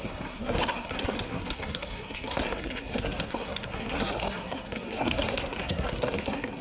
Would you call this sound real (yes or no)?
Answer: no